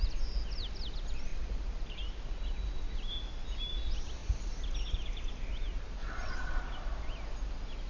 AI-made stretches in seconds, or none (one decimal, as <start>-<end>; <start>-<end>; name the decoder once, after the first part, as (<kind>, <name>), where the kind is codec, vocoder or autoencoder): 6.0-6.6 (vocoder, WaveNeXt)